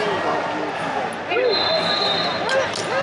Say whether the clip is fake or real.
real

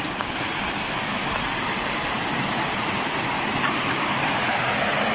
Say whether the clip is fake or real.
real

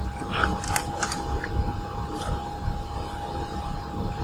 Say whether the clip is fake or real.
real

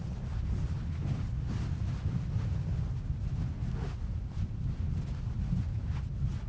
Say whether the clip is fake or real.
real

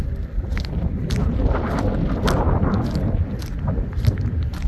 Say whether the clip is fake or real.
real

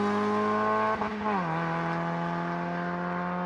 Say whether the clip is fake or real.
real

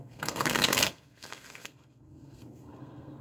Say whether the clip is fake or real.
fake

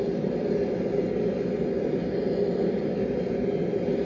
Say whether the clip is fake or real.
real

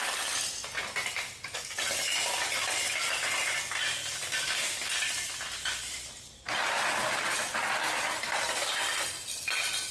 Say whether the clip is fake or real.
real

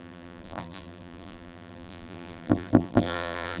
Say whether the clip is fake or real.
fake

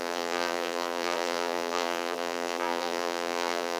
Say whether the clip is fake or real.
fake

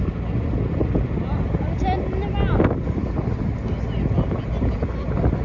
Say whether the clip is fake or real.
real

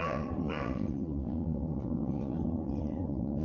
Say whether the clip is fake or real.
fake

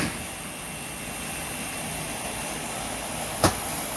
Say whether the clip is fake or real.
real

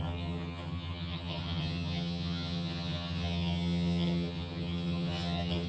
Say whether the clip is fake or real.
fake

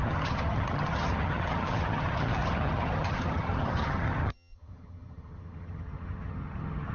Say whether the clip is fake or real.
fake